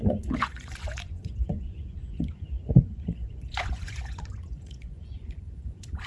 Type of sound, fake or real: fake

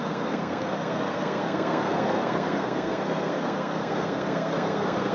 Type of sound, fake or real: fake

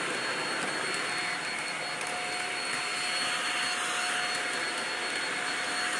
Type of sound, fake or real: real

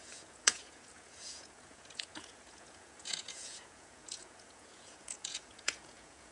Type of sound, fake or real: fake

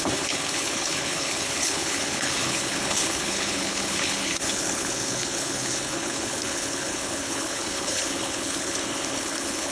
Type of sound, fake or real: fake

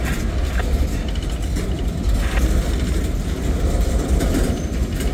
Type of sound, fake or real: real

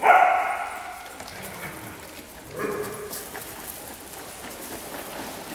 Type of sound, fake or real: real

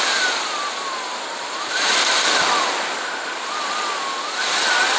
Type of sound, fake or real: fake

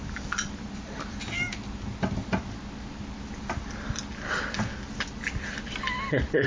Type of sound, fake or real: real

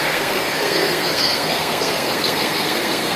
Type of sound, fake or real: fake